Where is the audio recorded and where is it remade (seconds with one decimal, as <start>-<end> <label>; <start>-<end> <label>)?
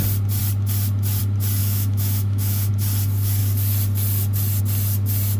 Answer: 0.0-1.6 recorded; 1.6-2.7 remade; 2.7-5.4 recorded